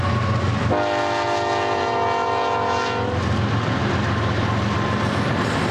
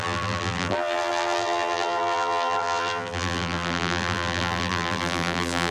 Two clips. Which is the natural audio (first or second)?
first